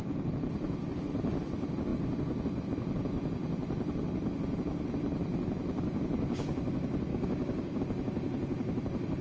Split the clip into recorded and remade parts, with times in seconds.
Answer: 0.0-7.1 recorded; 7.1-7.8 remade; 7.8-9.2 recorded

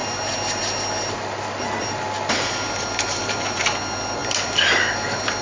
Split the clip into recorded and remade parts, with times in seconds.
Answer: 0.0-5.4 recorded

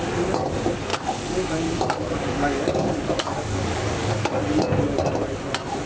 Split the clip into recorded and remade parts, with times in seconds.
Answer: 0.0-0.9 recorded; 0.9-4.4 remade; 4.4-5.9 recorded

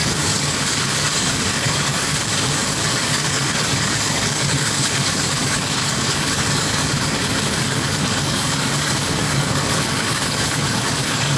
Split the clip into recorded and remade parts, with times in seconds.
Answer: 0.0-11.4 remade

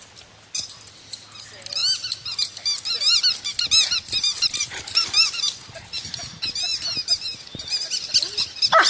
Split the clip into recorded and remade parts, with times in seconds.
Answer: 0.0-8.9 recorded